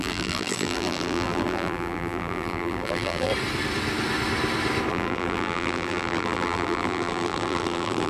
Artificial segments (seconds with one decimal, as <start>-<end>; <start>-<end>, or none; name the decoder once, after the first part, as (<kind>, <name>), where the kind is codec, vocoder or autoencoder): 0.0-3.3 (vocoder, BigVGAN v2); 4.9-8.1